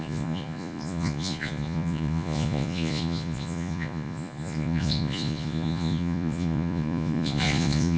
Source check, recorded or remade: remade